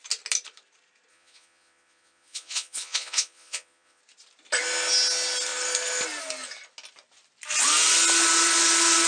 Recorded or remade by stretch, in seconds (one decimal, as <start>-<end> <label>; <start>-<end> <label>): 0.0-1.1 recorded; 1.1-4.0 remade; 4.0-9.1 recorded